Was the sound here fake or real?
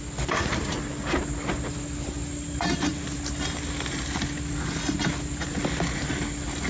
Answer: real